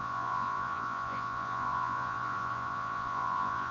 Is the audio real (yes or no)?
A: no